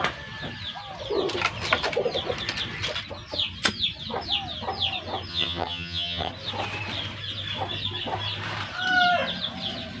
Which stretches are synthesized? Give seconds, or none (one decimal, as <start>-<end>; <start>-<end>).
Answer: 5.3-6.3